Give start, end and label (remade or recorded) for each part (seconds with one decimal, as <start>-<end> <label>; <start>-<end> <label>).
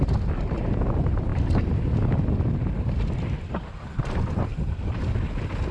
0.0-1.3 recorded; 1.3-1.8 remade; 1.8-5.7 recorded